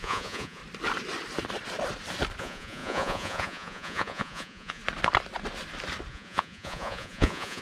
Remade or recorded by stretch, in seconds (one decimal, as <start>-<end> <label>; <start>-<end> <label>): 0.0-0.6 remade; 0.6-2.4 recorded; 2.4-4.8 remade; 4.8-6.1 recorded; 6.1-7.6 remade